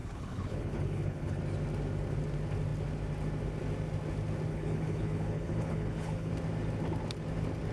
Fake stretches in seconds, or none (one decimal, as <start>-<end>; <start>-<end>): 0.0-1.4; 4.5-6.3